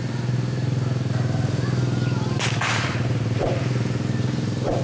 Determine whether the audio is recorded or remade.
recorded